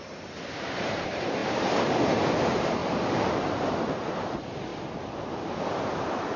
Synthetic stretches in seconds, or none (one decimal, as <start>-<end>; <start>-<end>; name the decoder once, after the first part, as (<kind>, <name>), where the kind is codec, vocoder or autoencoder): 0.0-2.8 (vocoder, BigVGAN v2); 3.4-4.7; 5.8-6.4